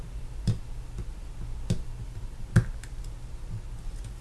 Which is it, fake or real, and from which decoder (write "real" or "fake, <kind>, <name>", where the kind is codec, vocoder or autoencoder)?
real